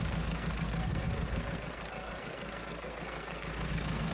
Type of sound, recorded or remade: remade